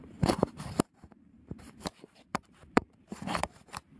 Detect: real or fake fake